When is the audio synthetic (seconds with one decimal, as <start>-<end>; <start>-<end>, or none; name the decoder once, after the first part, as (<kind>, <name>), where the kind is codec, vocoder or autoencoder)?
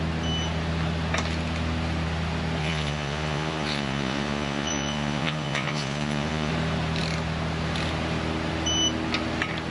2.6-6.5 (vocoder, Vocos)